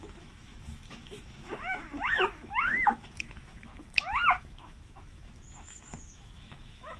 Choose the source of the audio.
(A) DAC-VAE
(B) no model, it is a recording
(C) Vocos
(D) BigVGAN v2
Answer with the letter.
A